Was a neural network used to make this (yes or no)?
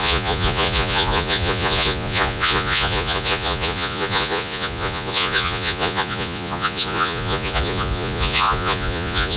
yes